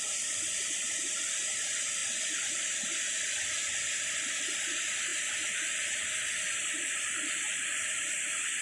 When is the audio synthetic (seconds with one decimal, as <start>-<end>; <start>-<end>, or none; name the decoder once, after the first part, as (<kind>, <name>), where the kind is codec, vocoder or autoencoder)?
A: 0.8-1.3 (vocoder, BigVGAN v2)